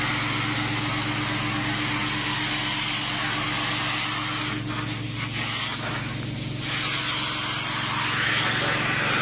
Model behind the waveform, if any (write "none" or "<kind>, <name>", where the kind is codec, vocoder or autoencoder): none